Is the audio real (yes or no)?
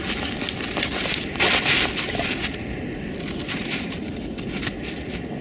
yes